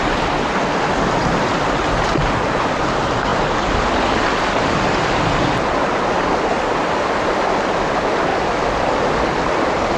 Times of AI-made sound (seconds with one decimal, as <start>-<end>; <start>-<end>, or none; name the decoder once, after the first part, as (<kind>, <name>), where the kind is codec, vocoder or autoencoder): none